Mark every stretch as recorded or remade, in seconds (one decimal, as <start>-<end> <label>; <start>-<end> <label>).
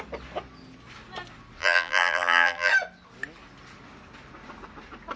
0.0-1.6 recorded; 1.6-2.7 remade; 2.7-5.2 recorded